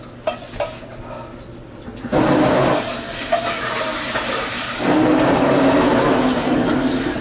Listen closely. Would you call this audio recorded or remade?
recorded